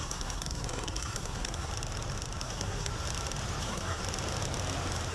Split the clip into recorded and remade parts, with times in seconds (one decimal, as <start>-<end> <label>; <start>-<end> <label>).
0.0-1.7 remade; 1.7-2.4 recorded; 2.4-2.9 remade; 2.9-3.6 recorded; 3.6-4.0 remade; 4.0-5.1 recorded